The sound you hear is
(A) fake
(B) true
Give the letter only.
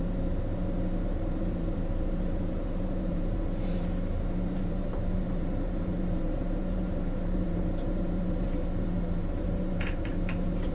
A